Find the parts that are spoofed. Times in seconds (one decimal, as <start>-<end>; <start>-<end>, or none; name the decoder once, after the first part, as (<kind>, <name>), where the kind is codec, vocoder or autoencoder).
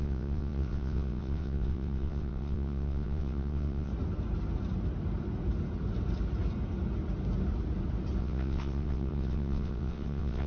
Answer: 0.0-3.9 (vocoder, WaveNeXt); 8.2-10.5